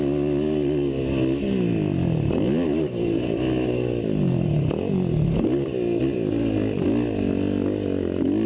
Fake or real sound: real